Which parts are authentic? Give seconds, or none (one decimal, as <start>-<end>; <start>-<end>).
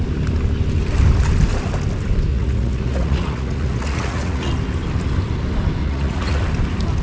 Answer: 0.0-2.3; 4.5-5.8; 6.4-7.0